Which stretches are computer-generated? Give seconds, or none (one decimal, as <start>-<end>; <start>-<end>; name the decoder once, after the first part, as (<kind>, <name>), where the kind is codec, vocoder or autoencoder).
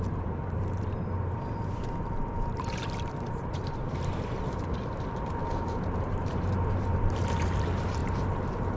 0.0-8.8 (vocoder, BigVGAN v2)